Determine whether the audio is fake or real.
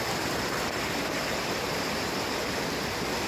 real